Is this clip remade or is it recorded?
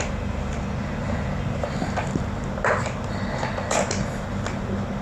recorded